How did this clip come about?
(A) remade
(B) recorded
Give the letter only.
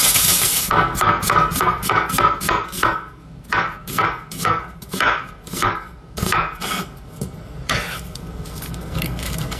A